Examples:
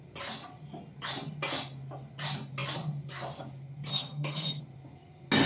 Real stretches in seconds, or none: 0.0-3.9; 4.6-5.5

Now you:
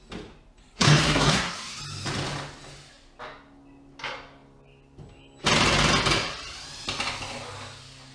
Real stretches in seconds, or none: 0.0-0.6; 1.8-8.1

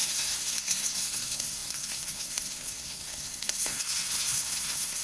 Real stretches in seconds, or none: none

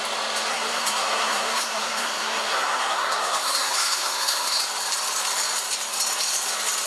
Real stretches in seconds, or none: 0.0-0.5; 4.6-6.9